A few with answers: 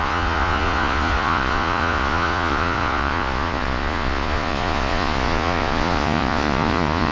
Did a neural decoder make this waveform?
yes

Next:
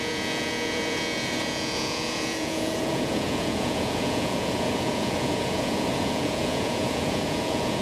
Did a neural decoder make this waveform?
yes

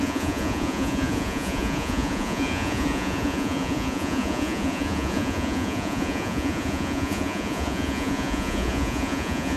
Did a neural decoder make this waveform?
yes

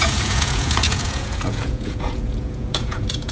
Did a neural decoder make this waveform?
yes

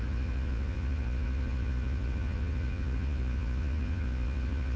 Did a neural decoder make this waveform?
yes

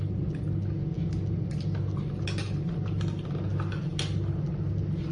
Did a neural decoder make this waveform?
no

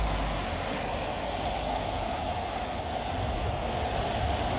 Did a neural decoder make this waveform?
no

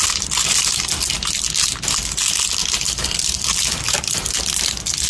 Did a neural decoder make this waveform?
no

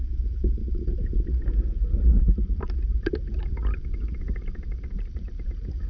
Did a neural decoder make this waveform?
no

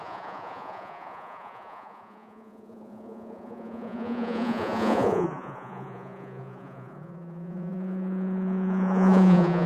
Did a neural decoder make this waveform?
yes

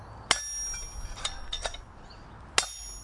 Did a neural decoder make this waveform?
no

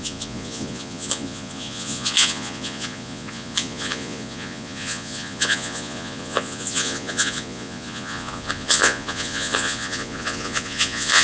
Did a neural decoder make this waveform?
yes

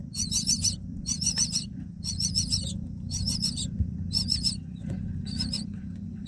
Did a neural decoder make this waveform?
yes